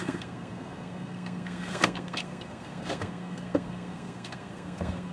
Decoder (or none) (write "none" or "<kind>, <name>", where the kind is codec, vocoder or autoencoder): codec, SNAC